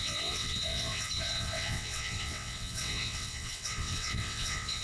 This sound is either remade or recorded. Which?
remade